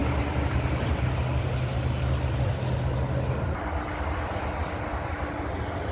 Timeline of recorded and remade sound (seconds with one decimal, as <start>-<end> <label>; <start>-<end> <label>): 0.0-5.9 recorded